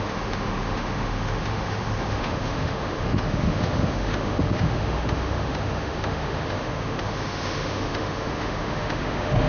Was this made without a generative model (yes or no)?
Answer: no